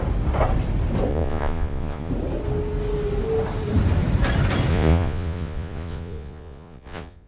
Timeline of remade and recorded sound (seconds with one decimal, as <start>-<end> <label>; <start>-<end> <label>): 0.0-1.1 recorded; 1.1-2.1 remade; 2.1-4.7 recorded; 4.7-7.3 remade